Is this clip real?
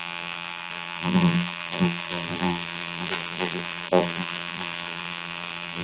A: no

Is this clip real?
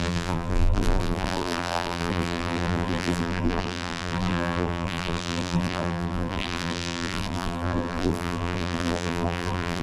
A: no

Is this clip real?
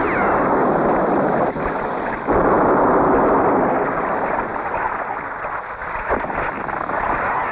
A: yes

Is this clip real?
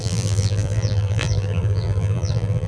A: no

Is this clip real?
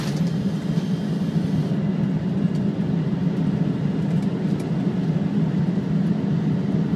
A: yes